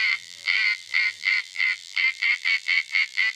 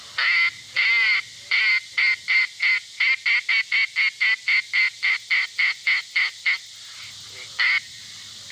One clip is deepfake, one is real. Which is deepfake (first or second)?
first